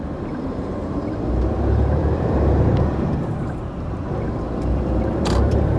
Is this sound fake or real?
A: fake